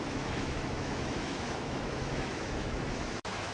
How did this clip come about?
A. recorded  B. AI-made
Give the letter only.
B